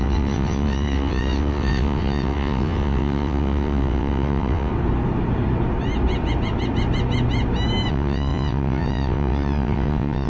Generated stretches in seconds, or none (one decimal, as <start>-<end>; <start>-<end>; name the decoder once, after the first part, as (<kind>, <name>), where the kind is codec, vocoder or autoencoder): 0.0-4.7 (vocoder, WaveNeXt); 7.9-10.3

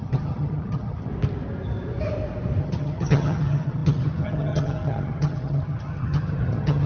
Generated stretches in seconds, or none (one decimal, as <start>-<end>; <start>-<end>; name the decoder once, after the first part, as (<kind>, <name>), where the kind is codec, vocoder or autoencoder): 0.0-1.1 (vocoder, HiFi-GAN); 2.6-6.9

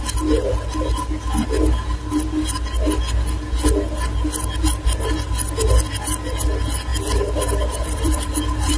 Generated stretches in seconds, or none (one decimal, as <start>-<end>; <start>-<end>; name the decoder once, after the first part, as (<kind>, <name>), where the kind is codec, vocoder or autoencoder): 6.9-8.8 (vocoder, BigVGAN v2)